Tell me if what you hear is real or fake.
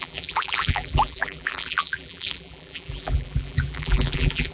fake